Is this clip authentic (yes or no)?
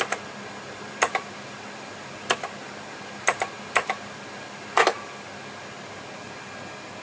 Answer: yes